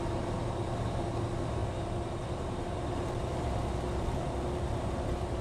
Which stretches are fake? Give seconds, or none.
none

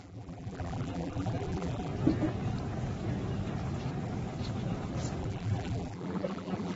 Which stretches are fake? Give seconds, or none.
0.0-1.9; 5.2-6.8

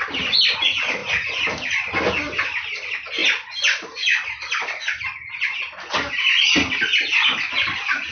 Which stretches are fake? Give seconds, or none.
none

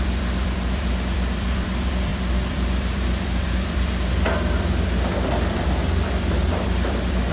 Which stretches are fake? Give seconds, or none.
0.0-7.3

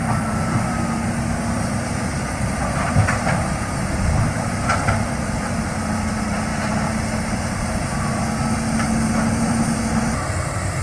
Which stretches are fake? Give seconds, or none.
0.0-6.5; 9.4-10.8

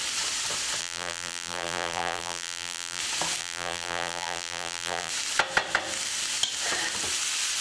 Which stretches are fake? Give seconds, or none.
0.8-3.0; 3.4-5.1